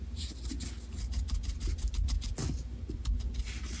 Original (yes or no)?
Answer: yes